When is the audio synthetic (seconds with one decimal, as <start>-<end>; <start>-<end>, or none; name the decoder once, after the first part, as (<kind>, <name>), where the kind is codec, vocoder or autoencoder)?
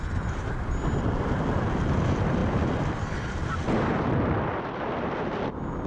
none